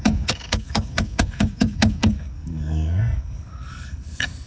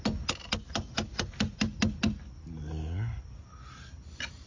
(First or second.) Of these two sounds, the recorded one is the second